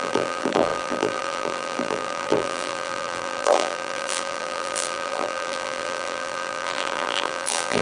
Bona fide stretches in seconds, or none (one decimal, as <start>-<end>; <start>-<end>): none